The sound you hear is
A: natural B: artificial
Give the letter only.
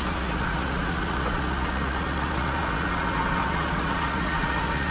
B